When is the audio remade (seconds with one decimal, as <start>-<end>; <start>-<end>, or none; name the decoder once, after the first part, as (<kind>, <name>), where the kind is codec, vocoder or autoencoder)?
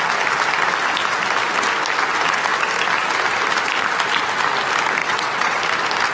5.0-5.6 (vocoder, WaveNeXt)